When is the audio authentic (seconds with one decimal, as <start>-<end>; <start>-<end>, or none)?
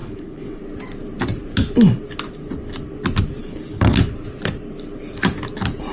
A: 0.6-3.4; 4.0-5.9